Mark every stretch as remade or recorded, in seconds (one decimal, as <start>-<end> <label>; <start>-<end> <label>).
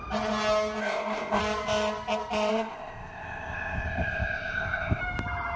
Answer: 0.0-0.8 recorded; 0.8-1.4 remade; 1.4-2.5 recorded; 2.5-5.0 remade; 5.0-5.6 recorded